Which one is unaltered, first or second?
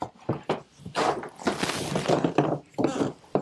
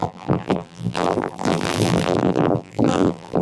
first